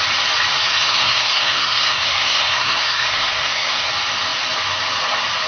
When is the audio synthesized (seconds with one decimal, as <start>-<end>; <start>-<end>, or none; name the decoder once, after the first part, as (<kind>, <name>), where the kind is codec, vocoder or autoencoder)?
0.6-3.9 (codec, SNAC)